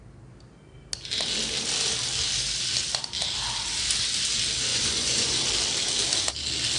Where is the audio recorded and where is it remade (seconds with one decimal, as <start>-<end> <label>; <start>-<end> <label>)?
0.0-4.7 recorded; 4.7-5.4 remade; 5.4-6.8 recorded

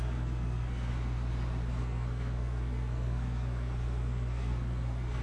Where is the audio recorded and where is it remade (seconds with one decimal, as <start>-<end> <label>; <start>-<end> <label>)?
0.0-0.9 remade; 0.9-1.8 recorded; 1.8-5.2 remade

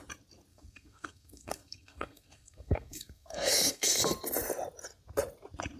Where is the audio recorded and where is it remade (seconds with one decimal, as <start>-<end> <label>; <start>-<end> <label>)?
0.0-0.5 recorded; 0.5-4.0 remade; 4.0-5.8 recorded